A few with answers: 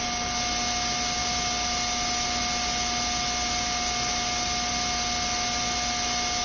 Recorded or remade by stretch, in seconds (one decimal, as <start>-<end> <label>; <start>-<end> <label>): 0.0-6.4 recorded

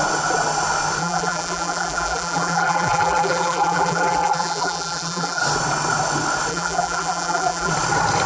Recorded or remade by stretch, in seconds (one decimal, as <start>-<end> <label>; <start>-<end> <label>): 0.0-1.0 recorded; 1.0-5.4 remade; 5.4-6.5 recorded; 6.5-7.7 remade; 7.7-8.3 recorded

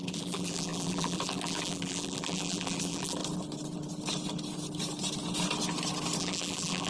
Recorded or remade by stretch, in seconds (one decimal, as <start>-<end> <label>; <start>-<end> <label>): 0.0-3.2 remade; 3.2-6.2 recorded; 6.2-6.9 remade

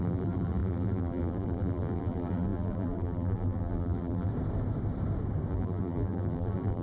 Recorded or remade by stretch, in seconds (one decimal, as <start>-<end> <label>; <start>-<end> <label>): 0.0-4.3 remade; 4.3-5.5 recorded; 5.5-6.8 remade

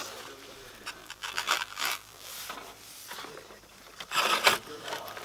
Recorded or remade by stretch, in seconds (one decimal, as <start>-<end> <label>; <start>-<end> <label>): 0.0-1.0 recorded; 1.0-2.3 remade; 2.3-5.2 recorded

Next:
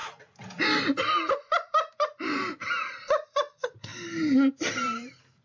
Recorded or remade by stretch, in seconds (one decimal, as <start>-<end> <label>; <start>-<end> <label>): 0.0-1.2 recorded; 1.2-3.9 remade; 3.9-4.5 recorded; 4.5-5.4 remade